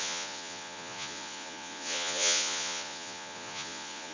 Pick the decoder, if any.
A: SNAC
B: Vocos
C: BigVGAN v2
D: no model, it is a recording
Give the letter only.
B